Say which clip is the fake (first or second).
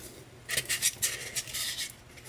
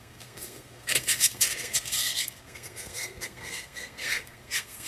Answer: second